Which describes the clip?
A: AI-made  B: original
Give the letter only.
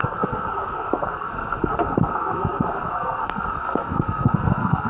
A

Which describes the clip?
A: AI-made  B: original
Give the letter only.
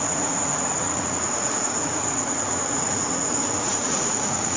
A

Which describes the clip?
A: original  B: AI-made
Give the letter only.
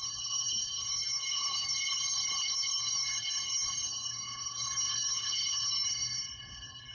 B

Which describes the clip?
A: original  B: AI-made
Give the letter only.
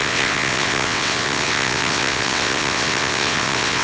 B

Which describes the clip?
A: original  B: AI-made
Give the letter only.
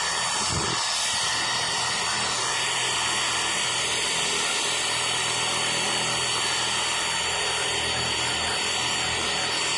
A